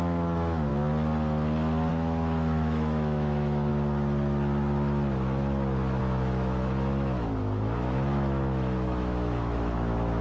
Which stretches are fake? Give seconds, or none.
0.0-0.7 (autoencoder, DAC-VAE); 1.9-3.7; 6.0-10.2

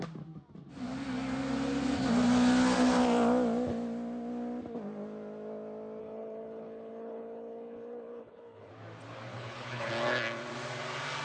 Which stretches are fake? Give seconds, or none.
6.0-8.7 (codec, HILCodec); 9.3-9.9

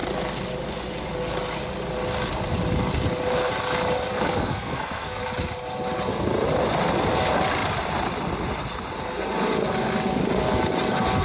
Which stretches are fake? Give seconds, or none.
4.1-5.2 (codec, SNAC)